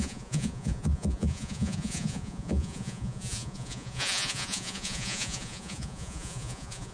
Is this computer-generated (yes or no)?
yes